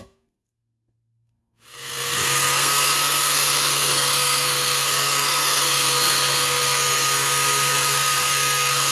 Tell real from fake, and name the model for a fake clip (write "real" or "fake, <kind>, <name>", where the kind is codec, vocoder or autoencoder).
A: fake, codec, SNAC